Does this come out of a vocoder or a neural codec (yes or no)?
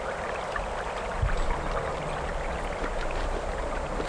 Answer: no